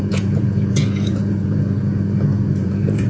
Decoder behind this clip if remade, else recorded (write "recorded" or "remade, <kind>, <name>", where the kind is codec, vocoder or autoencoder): remade, vocoder, Vocos